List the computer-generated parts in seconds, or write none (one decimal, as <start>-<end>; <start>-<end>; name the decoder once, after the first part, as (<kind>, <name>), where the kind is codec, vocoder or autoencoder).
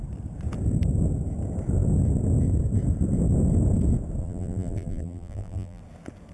4.2-5.8 (vocoder, BigVGAN v2)